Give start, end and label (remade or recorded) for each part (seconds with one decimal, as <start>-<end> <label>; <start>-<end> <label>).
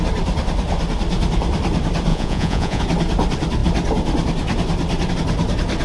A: 0.0-2.1 recorded; 2.1-2.8 remade; 2.8-5.8 recorded